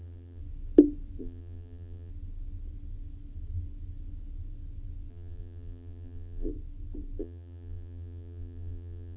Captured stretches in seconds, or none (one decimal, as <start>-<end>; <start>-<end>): 0.4-1.2; 2.1-5.1; 6.5-7.2